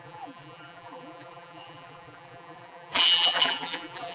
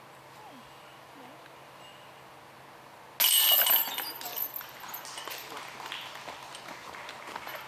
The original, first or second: second